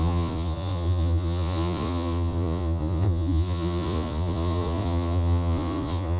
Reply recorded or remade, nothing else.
remade